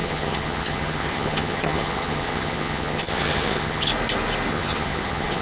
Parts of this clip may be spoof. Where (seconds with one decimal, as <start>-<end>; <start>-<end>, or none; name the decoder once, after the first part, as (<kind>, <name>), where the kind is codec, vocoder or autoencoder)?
0.0-3.9 (vocoder, HiFi-GAN); 4.5-5.4